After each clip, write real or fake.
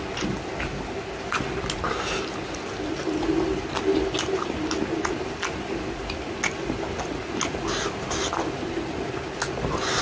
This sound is real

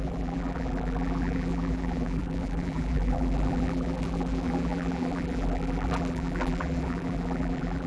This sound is fake